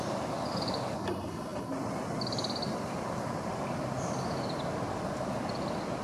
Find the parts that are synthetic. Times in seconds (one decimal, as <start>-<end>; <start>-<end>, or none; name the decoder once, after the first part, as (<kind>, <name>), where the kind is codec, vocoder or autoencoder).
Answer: none